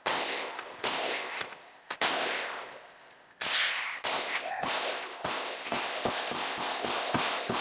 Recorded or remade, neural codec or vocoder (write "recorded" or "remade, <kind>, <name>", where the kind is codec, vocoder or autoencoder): remade, codec, ZipCodec